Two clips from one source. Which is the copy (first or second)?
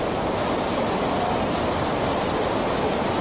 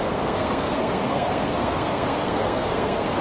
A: second